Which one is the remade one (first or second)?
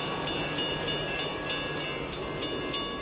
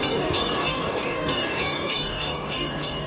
second